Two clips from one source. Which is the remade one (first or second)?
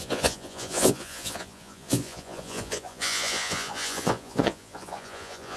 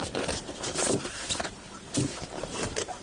first